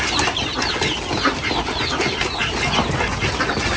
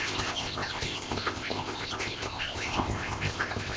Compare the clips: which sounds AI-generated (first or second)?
second